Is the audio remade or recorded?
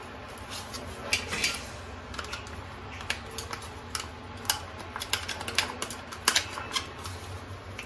recorded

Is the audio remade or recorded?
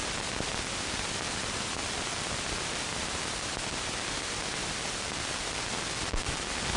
recorded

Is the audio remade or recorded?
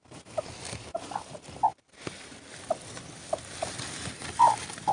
recorded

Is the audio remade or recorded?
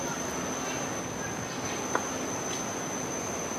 recorded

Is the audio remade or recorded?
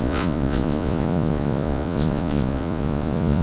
remade